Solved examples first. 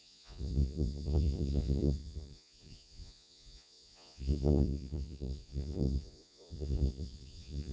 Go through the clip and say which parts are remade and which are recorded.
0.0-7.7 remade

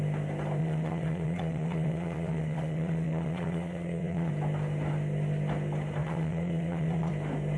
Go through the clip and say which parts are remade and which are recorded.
0.0-0.6 recorded; 0.6-4.3 remade; 4.3-6.0 recorded; 6.0-7.1 remade; 7.1-7.6 recorded

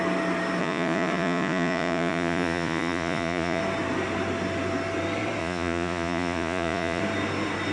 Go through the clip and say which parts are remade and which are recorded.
0.0-0.6 recorded; 0.6-3.6 remade; 3.6-5.4 recorded; 5.4-7.0 remade; 7.0-7.7 recorded

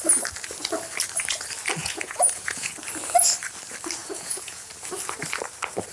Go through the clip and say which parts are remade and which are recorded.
0.0-1.8 recorded; 1.8-2.7 remade; 2.7-4.0 recorded; 4.0-4.7 remade; 4.7-5.9 recorded

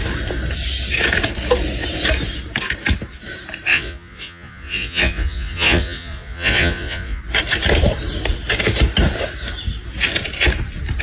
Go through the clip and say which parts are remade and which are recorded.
0.0-3.7 recorded; 3.7-7.2 remade; 7.2-11.0 recorded

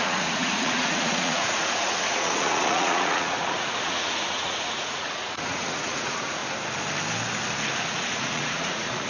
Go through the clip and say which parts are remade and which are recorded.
0.0-6.4 remade; 6.4-7.9 recorded; 7.9-9.1 remade

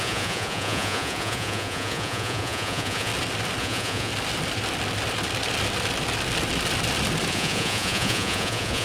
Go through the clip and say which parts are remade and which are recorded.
0.0-3.1 remade; 3.1-3.6 recorded; 3.6-4.1 remade; 4.1-7.3 recorded; 7.3-8.8 remade